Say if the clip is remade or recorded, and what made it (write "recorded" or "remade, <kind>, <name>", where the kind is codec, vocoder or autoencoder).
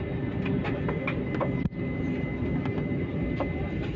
recorded